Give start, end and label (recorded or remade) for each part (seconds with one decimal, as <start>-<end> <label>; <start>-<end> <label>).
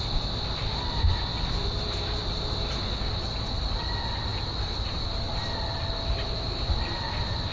0.0-4.3 recorded; 4.3-5.4 remade; 5.4-7.5 recorded